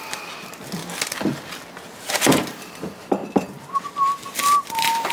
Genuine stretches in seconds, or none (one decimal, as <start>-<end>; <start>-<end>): 0.0-5.1